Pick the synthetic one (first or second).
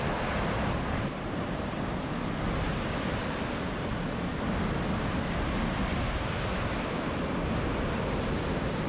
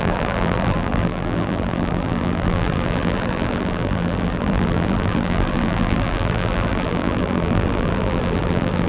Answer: second